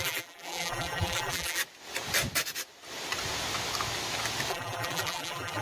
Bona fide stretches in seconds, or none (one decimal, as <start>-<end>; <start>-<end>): 1.6-4.5